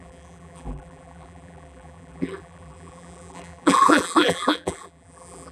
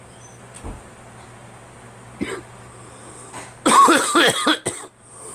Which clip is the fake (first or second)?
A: first